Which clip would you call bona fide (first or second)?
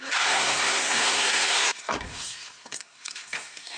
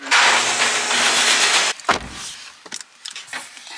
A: second